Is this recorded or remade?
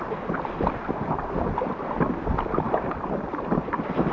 recorded